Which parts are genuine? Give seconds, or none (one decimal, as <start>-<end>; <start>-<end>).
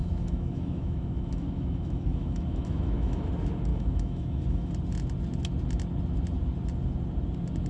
3.3-3.7; 4.7-7.7